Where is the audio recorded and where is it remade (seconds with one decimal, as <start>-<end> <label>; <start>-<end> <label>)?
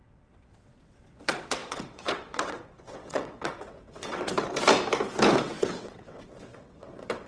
0.0-4.3 remade; 4.3-5.4 recorded; 5.4-7.3 remade